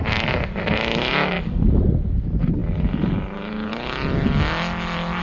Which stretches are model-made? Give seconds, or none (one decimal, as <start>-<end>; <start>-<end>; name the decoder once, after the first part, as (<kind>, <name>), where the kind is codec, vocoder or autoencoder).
none